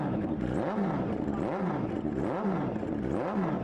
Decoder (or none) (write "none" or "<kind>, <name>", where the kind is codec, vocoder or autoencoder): vocoder, BigVGAN v2